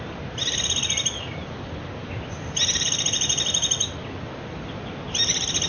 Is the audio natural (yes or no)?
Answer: yes